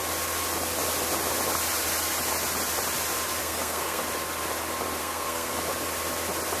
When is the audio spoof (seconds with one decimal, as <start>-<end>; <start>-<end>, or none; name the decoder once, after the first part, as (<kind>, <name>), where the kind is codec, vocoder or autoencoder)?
3.4-4.0 (codec, SNAC); 5.0-5.5